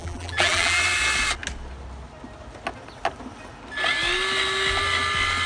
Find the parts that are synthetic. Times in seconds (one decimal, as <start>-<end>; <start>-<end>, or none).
0.0-0.8